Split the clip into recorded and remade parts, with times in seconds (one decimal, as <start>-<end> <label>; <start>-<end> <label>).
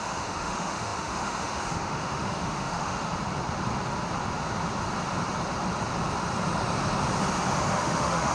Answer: 0.0-3.0 remade; 3.0-7.7 recorded; 7.7-8.3 remade